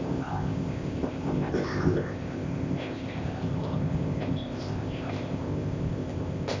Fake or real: fake